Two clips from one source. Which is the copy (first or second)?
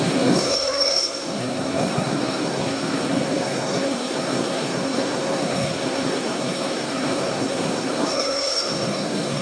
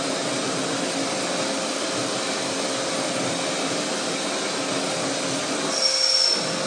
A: first